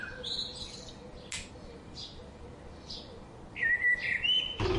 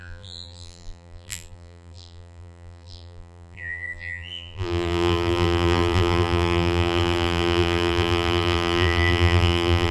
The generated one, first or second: second